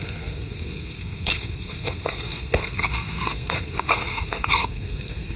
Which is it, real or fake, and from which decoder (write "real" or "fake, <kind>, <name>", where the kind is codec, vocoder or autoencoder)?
fake, codec, SNAC